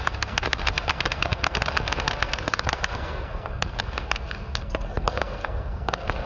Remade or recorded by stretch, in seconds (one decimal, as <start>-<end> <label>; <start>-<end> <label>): 0.0-6.3 remade